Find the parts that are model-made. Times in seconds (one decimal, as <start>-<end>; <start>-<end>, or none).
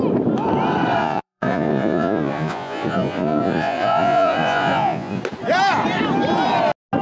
1.0-5.2